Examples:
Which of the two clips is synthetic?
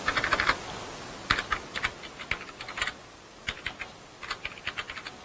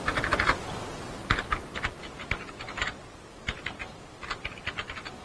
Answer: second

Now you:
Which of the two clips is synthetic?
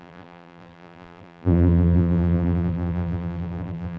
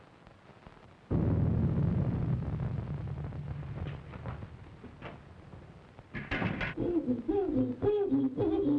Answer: first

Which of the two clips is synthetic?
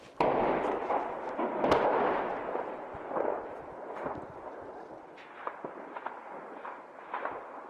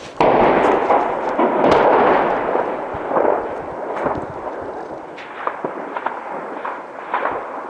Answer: second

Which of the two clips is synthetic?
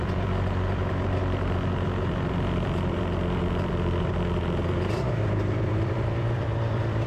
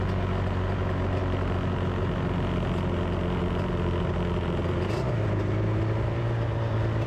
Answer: first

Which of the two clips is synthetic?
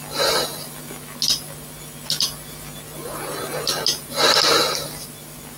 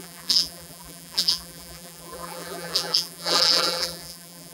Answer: second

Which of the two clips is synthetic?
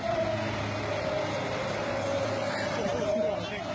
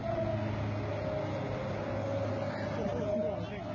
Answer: first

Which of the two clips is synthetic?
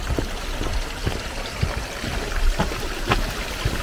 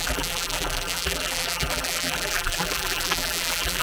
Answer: second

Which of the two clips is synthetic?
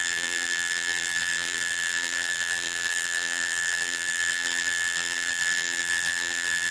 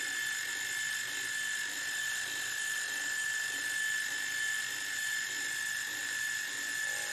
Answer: first